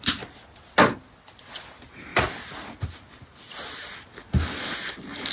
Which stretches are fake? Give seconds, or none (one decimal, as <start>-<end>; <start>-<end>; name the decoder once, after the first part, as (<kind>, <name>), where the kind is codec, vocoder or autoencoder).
none